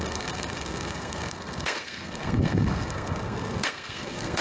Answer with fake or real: fake